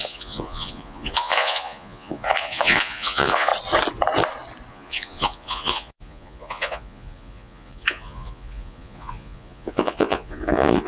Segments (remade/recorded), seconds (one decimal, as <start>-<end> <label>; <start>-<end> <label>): 0.0-3.5 remade; 3.5-4.7 recorded; 4.7-10.9 remade